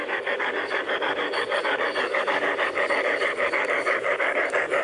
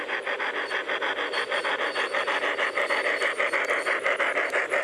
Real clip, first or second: second